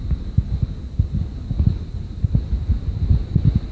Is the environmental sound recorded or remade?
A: recorded